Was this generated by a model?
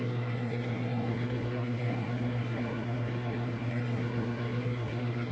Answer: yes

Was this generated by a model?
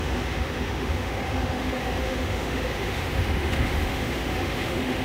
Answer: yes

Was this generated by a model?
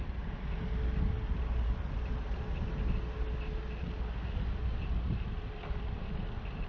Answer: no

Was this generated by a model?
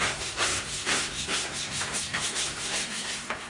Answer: yes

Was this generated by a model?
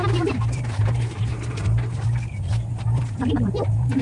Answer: yes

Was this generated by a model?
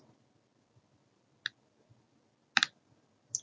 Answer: no